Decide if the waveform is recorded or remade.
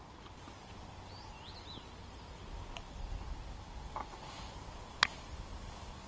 recorded